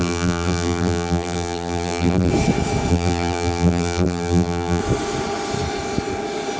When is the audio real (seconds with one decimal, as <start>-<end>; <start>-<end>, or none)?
2.3-2.9; 4.8-6.6